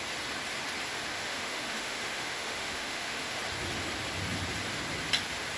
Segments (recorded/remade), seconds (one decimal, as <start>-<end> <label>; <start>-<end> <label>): 0.0-1.1 recorded; 1.1-3.4 remade; 3.4-5.6 recorded